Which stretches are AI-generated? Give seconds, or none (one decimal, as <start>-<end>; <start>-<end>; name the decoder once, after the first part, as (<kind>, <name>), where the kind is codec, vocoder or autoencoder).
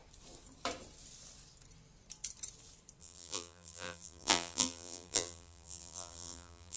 3.0-6.8 (vocoder, BigVGAN v2)